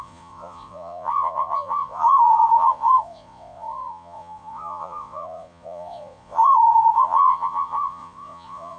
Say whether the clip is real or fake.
fake